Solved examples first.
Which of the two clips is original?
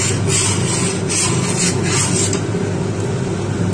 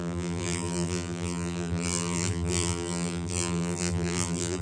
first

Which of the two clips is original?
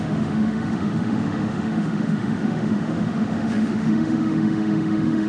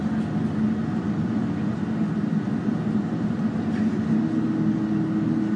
second